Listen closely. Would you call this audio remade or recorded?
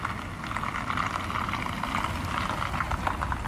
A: recorded